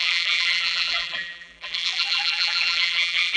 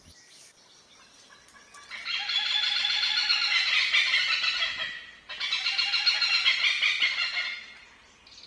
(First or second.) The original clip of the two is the second